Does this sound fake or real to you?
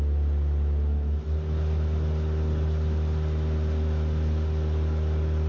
real